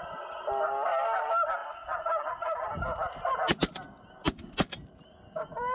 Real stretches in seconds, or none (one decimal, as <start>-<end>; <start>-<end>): 0.0-5.7